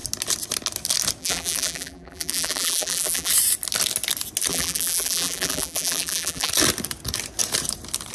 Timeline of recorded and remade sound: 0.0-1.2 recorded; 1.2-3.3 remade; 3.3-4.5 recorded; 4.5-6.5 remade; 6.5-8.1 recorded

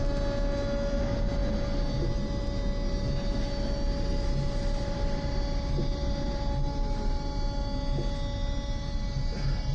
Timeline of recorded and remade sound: 0.0-9.7 recorded

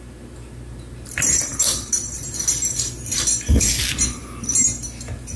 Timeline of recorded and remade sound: 0.0-5.4 recorded

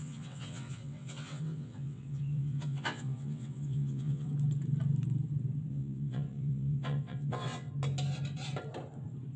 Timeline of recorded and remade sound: 0.0-4.3 remade; 4.3-5.7 recorded; 5.7-7.7 remade; 7.7-9.4 recorded

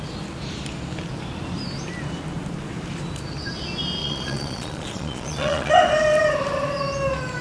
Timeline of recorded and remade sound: 0.0-4.0 recorded; 4.0-5.7 remade; 5.7-7.4 recorded

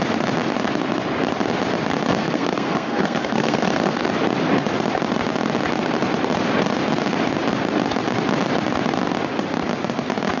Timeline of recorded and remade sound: 0.0-2.1 recorded; 2.1-4.1 remade; 4.1-10.4 recorded

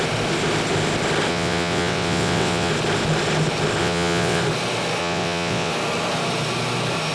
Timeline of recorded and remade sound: 0.0-1.3 recorded; 1.3-2.7 remade; 2.7-3.8 recorded; 3.8-4.4 remade; 4.4-5.0 recorded; 5.0-5.7 remade; 5.7-7.1 recorded